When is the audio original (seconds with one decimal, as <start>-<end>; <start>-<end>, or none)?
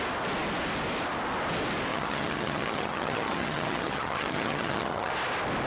0.0-1.9; 5.1-5.7